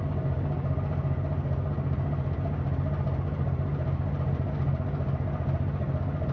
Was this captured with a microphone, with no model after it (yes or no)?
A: yes